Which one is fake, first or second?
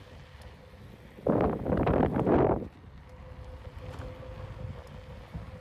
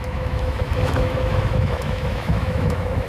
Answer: second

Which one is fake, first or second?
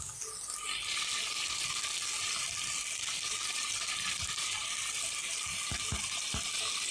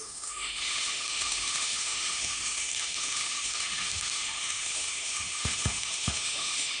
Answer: second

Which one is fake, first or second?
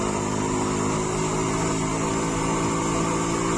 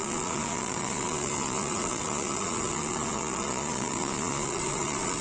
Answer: second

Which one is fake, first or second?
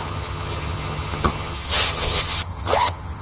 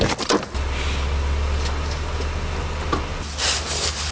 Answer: first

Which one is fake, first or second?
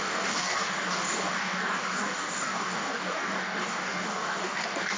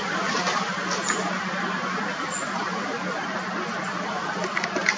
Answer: first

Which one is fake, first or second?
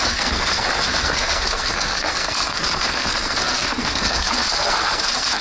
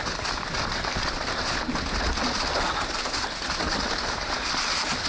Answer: first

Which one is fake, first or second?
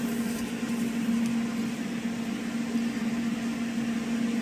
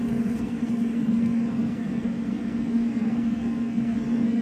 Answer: second